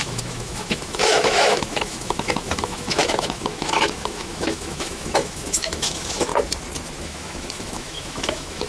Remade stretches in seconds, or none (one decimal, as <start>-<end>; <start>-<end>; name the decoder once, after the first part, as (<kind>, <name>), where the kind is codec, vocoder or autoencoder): 0.0-6.3 (autoencoder, DAC-VAE); 7.0-8.7